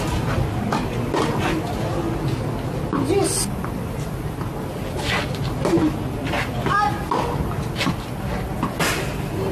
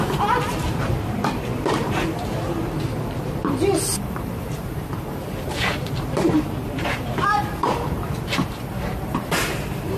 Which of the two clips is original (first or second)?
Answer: first